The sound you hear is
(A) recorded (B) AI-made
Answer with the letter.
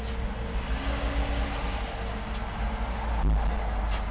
A